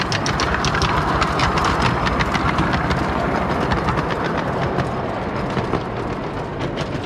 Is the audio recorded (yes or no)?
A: yes